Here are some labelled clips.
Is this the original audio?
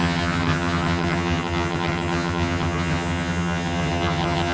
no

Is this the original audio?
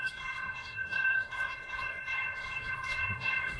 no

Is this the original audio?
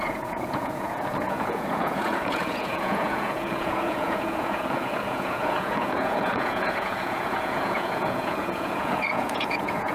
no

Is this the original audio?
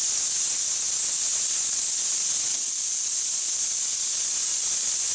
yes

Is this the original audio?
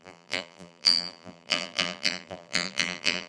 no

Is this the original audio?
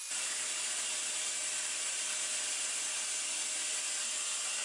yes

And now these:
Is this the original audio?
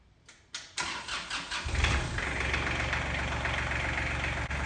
yes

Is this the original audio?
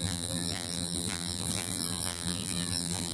no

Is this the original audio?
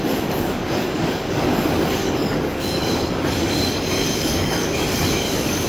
no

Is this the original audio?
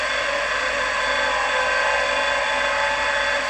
yes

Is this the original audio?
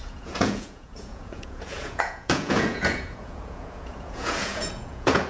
no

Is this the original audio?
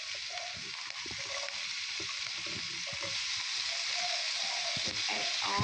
yes